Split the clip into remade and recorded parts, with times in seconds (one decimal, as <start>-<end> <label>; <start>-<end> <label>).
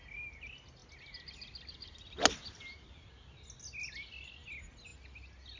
0.0-5.6 recorded